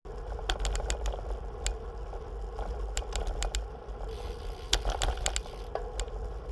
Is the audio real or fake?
real